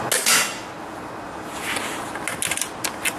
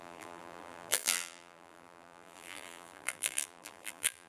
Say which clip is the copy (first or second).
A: second